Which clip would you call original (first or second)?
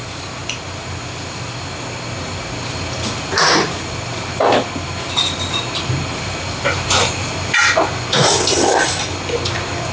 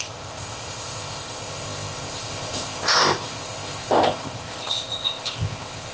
first